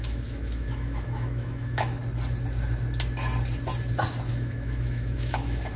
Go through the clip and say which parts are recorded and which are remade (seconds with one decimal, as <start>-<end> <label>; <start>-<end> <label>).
0.0-2.0 remade; 2.0-4.3 recorded; 4.3-5.8 remade